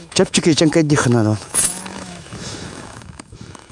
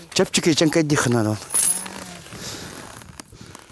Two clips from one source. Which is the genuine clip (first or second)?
second